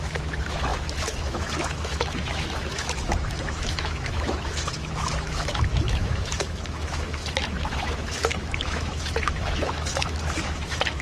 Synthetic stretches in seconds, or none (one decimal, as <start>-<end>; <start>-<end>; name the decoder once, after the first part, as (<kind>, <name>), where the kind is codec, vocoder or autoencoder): 0.0-11.0 (autoencoder, DAC-VAE)